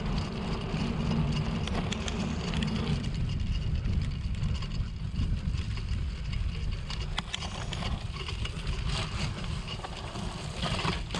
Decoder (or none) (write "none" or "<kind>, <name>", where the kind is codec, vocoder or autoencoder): none